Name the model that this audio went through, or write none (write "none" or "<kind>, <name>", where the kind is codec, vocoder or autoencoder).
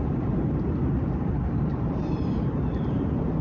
vocoder, BigVGAN v2